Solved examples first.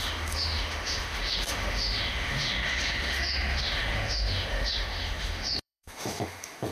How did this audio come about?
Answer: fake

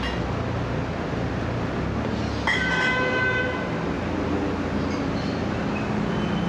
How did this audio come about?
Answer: real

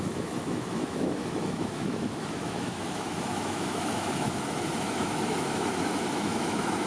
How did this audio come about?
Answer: fake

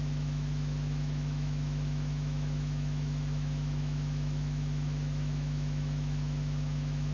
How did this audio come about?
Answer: fake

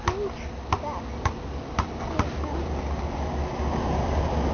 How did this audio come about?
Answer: real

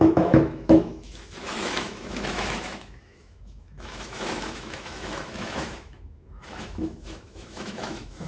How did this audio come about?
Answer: fake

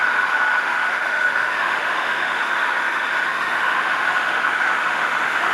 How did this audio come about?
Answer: fake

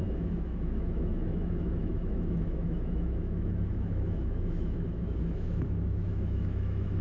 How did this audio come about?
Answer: fake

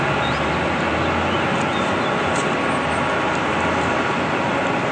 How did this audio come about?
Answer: real